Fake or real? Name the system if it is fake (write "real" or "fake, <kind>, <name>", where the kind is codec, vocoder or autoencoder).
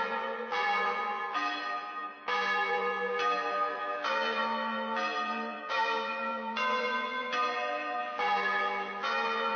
fake, vocoder, BigVGAN v2